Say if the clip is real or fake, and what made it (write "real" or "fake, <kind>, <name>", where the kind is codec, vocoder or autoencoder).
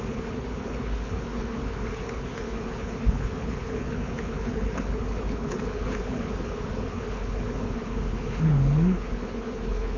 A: fake, codec, HILCodec